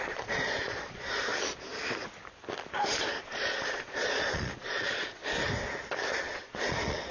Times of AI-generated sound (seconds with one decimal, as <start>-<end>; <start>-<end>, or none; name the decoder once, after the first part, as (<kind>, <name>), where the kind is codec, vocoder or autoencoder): 0.0-1.3 (vocoder, Vocos); 3.2-5.2; 6.2-7.1